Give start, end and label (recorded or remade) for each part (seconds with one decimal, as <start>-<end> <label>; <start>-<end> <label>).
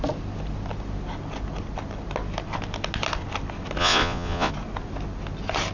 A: 0.0-3.8 recorded; 3.8-4.5 remade; 4.5-5.7 recorded